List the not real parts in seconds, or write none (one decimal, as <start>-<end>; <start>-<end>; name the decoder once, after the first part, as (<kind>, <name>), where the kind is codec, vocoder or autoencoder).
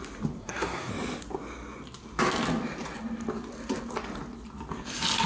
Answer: 0.4-0.9 (codec, SNAC)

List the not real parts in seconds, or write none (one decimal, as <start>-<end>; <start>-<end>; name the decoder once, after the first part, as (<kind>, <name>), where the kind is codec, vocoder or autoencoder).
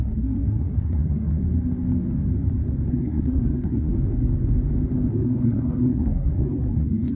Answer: 0.0-1.4 (codec, SNAC); 2.9-3.9; 5.1-7.1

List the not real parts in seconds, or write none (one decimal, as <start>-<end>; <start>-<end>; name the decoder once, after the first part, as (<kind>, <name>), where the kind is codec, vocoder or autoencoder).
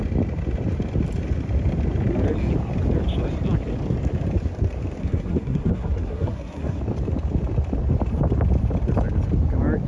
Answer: 5.0-6.8 (codec, SNAC)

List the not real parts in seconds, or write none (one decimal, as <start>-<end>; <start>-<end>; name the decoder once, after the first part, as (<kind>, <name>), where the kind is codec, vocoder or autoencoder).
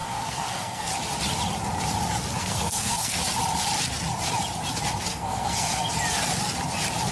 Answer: 0.0-0.9 (codec, SNAC); 2.4-3.2; 5.1-5.9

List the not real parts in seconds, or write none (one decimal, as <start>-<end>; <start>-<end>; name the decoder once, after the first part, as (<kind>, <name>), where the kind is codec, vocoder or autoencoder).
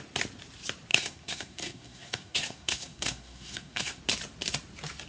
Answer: 0.9-4.0 (codec, SNAC)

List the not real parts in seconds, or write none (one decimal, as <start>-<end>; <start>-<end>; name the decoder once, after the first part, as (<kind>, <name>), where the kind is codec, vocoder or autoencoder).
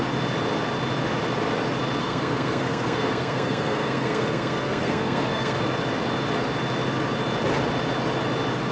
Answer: 2.0-5.6 (codec, SNAC)